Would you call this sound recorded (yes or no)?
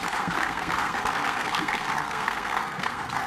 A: no